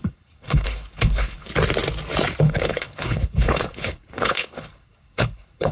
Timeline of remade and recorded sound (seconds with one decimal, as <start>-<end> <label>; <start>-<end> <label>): 0.0-1.5 remade; 1.5-2.4 recorded; 2.4-5.7 remade